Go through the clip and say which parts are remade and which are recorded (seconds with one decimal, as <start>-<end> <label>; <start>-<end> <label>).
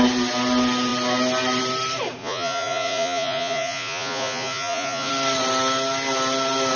0.0-2.2 recorded; 2.2-5.1 remade; 5.1-6.8 recorded